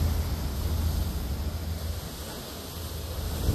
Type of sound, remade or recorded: recorded